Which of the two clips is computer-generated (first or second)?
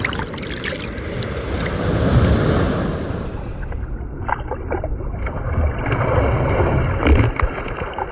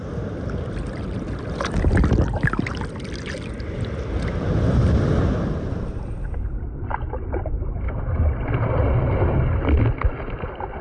first